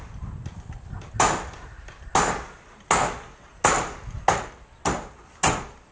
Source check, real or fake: real